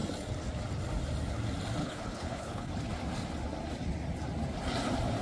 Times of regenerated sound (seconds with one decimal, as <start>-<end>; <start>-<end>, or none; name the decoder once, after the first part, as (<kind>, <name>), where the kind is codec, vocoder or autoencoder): 1.8-2.7 (codec, HILCodec)